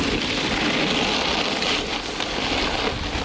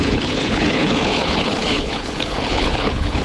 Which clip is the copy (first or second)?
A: second